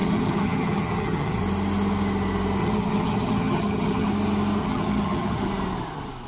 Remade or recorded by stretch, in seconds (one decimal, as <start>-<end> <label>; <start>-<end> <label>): 0.0-1.4 remade; 1.4-2.6 recorded; 2.6-4.1 remade; 4.1-4.6 recorded; 4.6-5.4 remade; 5.4-6.3 recorded